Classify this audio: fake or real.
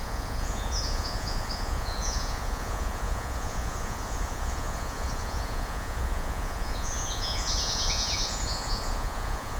fake